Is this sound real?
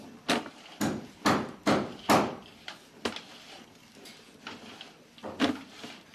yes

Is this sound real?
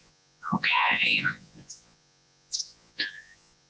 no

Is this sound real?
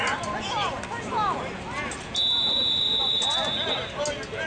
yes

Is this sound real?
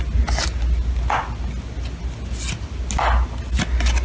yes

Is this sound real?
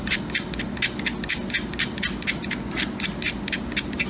yes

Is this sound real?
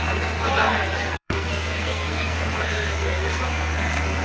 no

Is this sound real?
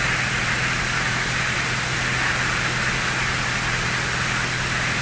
yes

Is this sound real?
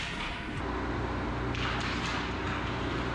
yes